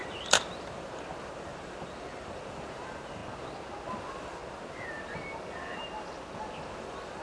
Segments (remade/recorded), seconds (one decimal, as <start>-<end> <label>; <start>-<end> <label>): 0.0-3.2 remade; 3.2-4.0 recorded; 4.0-4.4 remade; 4.4-6.7 recorded; 6.7-7.2 remade